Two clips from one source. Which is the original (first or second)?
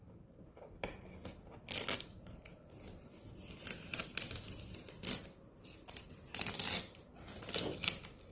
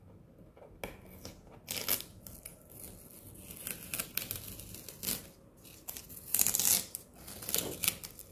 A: second